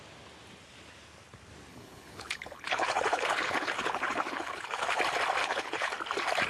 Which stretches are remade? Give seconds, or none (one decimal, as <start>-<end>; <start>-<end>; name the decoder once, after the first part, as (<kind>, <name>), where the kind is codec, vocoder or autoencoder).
1.7-5.0 (codec, HILCodec); 5.4-5.9